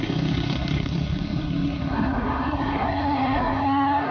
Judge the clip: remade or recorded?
remade